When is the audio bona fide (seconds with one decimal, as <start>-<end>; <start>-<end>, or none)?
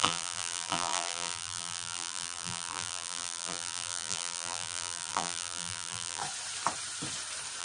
6.2-7.6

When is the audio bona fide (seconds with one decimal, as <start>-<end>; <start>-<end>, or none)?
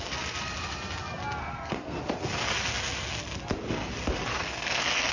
0.0-1.4; 2.0-4.3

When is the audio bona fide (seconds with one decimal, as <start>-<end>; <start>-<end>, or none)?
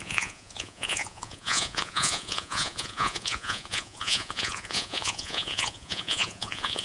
none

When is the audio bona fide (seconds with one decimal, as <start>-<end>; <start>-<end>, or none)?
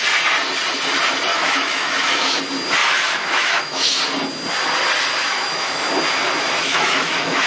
0.0-1.3; 2.4-2.8; 4.0-5.2; 5.9-6.6